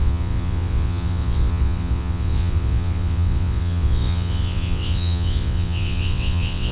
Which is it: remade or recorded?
remade